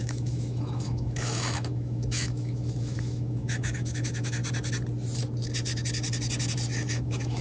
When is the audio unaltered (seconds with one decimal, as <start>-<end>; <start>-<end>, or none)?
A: 4.4-6.9